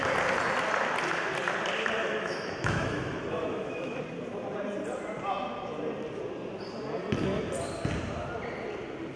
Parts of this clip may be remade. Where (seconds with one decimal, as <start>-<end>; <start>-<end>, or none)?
2.0-4.0